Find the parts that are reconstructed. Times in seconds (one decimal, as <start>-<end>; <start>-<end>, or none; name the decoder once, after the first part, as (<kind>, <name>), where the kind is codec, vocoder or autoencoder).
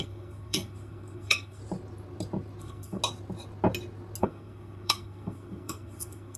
0.0-1.6 (codec, SNAC); 2.6-3.0; 4.2-6.4